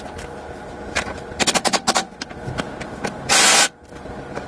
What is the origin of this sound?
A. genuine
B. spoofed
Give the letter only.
A